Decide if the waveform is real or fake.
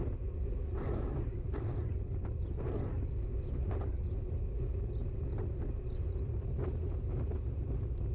real